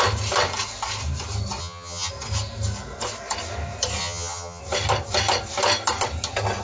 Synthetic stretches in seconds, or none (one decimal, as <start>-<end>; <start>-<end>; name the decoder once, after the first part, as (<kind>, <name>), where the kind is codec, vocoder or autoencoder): 1.6-2.1 (vocoder, HiFi-GAN); 4.0-4.6